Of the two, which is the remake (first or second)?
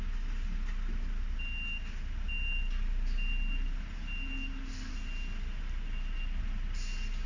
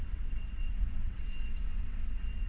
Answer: second